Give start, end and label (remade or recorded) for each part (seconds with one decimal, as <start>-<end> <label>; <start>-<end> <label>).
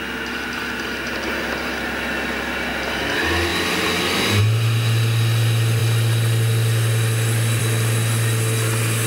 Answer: 0.0-9.1 recorded